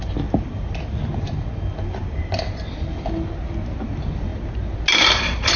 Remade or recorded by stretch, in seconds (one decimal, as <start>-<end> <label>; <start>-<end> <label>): 0.0-5.6 recorded